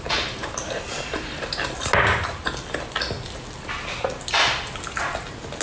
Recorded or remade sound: recorded